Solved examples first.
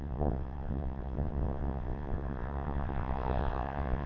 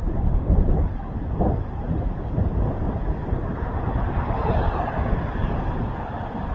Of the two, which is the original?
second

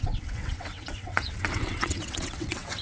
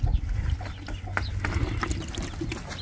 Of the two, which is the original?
second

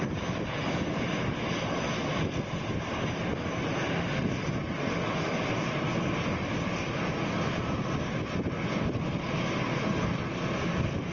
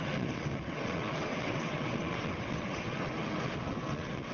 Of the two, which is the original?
first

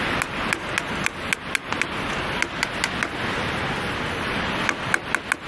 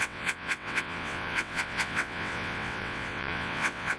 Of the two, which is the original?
first